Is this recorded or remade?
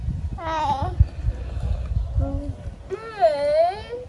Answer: recorded